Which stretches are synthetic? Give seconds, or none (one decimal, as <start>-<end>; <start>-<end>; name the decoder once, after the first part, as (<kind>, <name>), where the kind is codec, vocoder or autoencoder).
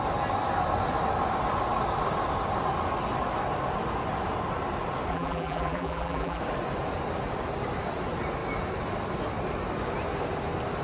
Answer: 5.1-6.4 (vocoder, BigVGAN v2)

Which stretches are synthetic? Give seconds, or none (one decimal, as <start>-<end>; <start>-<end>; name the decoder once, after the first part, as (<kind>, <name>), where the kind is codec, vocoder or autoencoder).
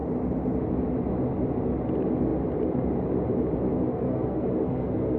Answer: 3.7-5.2 (codec, SNAC)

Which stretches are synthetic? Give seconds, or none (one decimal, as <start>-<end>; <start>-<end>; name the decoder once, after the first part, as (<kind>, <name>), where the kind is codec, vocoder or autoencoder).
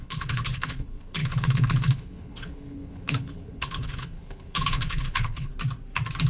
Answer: 0.0-5.5 (codec, HILCodec)